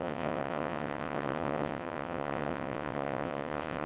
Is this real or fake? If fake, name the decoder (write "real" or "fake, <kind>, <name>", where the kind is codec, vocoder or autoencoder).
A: fake, vocoder, WaveNeXt